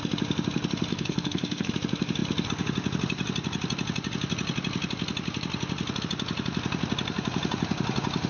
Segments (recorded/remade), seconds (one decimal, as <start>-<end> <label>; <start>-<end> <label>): 0.0-0.9 recorded; 0.9-1.7 remade; 1.7-8.3 recorded